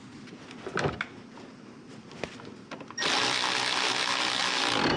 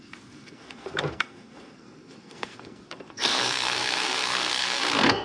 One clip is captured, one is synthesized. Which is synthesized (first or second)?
second